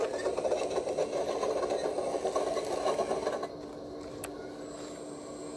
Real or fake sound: real